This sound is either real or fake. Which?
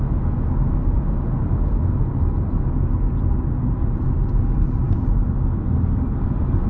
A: real